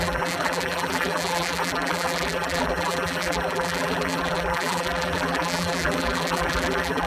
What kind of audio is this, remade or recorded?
remade